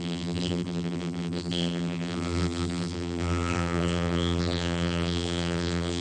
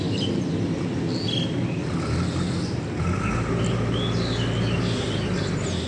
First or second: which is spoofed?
first